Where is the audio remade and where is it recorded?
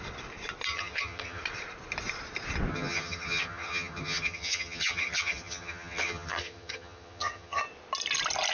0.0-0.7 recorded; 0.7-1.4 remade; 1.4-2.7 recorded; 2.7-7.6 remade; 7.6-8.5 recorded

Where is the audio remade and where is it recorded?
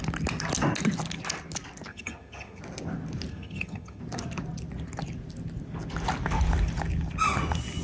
0.0-1.9 recorded; 1.9-2.6 remade; 2.6-3.3 recorded; 3.3-4.0 remade; 4.0-7.8 recorded